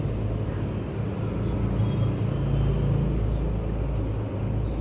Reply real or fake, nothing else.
real